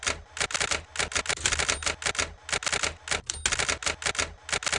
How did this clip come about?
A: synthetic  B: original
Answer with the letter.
B